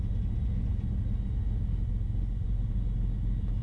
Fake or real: real